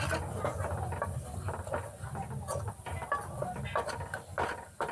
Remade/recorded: recorded